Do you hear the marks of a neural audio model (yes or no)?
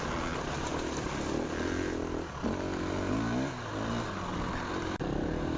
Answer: no